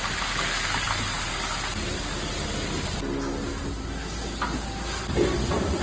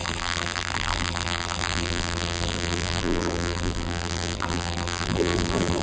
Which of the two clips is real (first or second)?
first